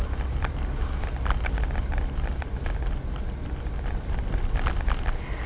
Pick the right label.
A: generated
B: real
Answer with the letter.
B